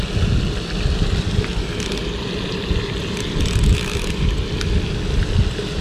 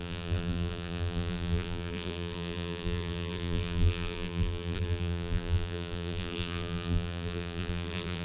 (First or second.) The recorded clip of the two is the first